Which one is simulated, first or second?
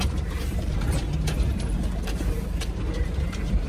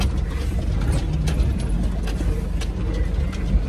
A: first